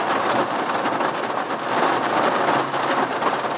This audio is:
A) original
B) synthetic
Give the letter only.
B